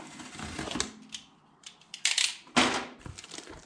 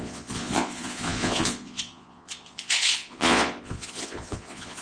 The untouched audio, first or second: first